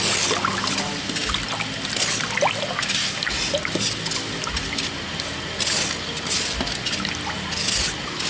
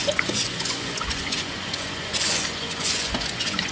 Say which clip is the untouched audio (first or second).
first